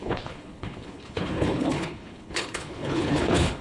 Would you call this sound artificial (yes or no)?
yes